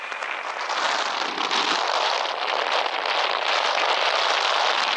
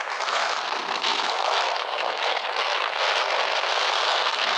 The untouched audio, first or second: first